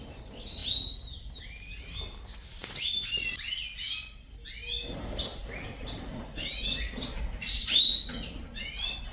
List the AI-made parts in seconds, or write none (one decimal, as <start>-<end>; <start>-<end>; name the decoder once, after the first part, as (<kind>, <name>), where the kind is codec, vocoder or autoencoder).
none